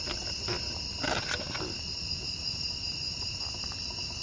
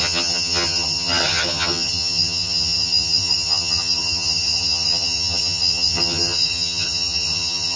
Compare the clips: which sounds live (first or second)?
first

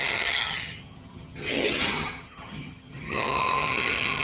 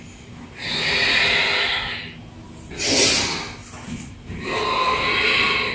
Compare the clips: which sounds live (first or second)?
second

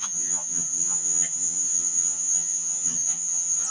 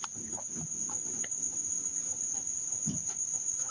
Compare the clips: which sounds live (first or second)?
second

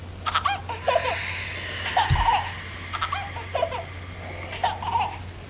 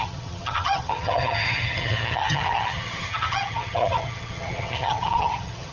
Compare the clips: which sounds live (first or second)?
first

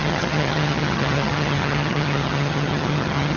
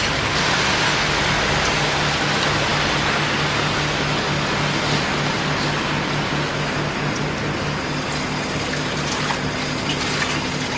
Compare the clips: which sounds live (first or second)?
second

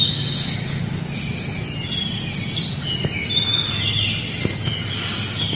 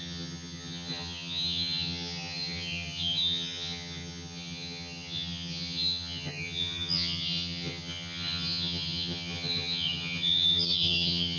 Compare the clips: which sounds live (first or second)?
first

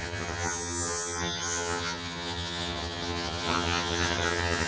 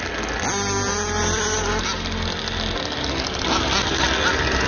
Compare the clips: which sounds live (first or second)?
second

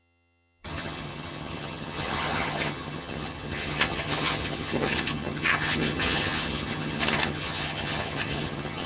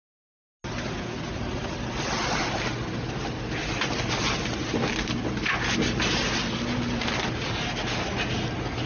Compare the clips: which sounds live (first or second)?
second